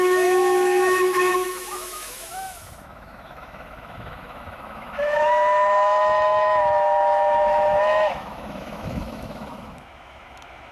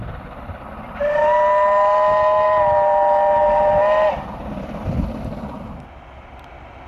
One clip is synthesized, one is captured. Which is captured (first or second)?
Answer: second